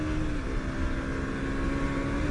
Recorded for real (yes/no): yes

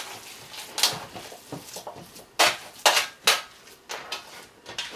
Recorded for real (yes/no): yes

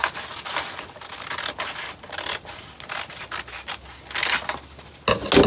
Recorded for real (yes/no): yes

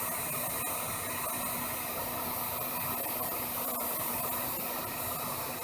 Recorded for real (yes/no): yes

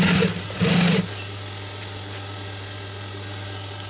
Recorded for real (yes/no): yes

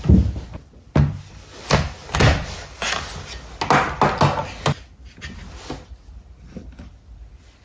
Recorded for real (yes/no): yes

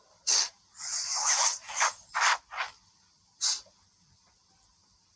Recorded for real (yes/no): no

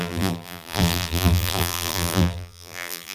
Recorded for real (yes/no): no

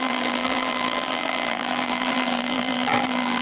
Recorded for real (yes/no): no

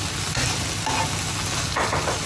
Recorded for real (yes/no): yes